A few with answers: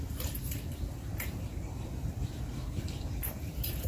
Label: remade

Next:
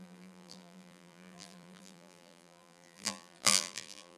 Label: remade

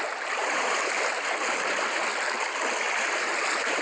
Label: recorded